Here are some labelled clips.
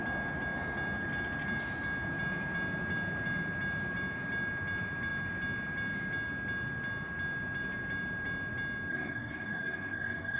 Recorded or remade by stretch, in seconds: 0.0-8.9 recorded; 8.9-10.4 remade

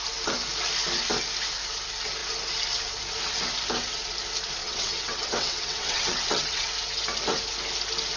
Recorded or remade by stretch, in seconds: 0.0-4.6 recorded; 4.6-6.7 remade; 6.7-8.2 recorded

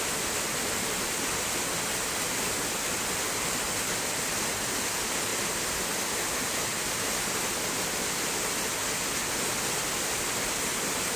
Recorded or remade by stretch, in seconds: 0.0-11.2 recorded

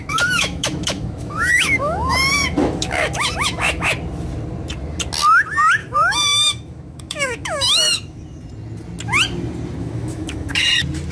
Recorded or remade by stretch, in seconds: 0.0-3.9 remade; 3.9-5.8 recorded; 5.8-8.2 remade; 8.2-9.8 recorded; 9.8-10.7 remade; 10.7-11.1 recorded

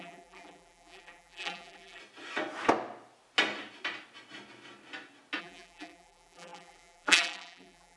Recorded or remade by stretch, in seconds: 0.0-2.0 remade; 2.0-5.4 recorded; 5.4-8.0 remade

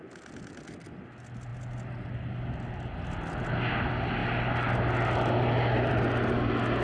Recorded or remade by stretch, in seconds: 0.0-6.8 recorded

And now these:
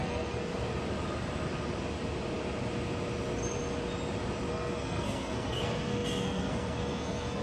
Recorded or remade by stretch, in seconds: 0.0-0.5 remade; 0.5-4.5 recorded; 4.5-7.4 remade

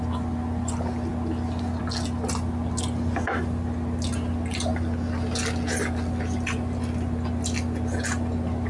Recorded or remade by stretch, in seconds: 0.0-8.7 recorded